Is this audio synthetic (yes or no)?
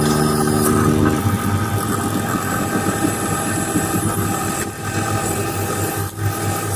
no